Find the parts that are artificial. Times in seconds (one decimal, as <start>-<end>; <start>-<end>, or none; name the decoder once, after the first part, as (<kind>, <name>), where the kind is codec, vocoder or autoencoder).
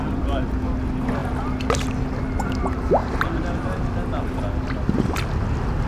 none